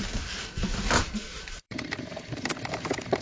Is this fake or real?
fake